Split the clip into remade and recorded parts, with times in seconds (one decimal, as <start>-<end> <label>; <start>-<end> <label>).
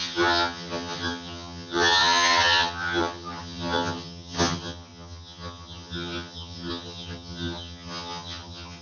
0.0-8.8 remade